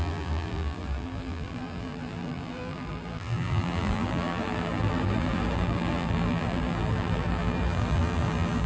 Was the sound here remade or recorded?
remade